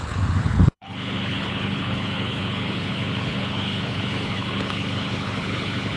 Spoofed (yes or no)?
yes